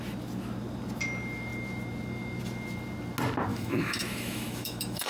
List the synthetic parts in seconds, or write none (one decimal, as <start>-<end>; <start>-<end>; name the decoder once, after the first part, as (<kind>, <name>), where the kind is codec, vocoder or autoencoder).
3.5-5.1 (autoencoder, DAC-VAE)